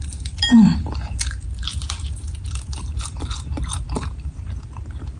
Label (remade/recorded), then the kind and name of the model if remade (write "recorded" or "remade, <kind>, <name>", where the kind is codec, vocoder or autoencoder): remade, vocoder, BigVGAN v2